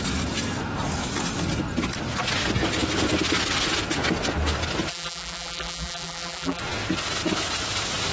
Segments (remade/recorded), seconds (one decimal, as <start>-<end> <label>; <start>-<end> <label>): 0.0-4.9 recorded; 4.9-6.6 remade; 6.6-8.1 recorded